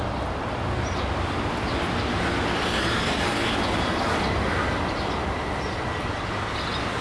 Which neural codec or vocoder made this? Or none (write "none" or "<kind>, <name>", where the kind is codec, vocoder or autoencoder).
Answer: none